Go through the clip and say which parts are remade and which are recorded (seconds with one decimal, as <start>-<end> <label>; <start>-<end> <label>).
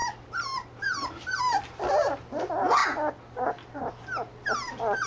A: 0.0-1.4 remade; 1.4-5.1 recorded